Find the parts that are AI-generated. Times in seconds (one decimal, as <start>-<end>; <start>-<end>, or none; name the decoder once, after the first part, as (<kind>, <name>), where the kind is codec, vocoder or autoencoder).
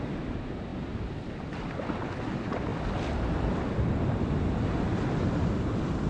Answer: none